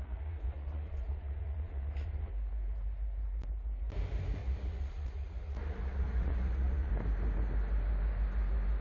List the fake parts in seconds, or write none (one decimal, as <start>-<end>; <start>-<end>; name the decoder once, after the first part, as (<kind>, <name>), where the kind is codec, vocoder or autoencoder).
0.0-2.3 (vocoder, Vocos); 4.4-6.9